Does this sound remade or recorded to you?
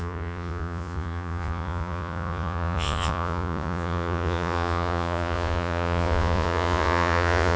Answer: remade